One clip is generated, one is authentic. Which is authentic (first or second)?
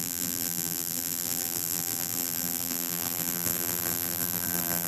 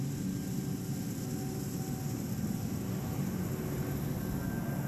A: second